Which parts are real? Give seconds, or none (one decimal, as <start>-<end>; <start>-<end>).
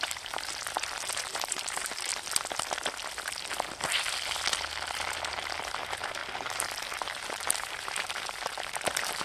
2.1-5.3